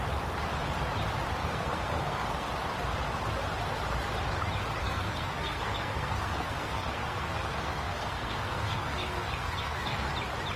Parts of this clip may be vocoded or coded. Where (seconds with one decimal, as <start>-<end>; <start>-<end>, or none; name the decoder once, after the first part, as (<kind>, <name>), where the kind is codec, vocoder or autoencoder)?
1.4-2.5 (codec, SNAC); 4.8-10.1